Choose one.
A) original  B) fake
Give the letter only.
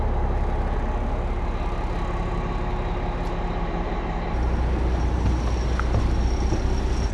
A